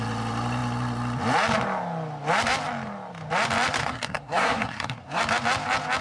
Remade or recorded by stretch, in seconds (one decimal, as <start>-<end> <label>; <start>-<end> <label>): 0.0-3.8 recorded; 3.8-5.2 remade; 5.2-6.0 recorded